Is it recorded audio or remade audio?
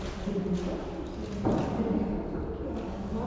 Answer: recorded